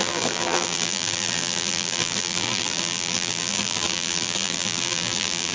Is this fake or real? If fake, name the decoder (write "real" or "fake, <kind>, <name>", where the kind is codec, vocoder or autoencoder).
fake, vocoder, BigVGAN v2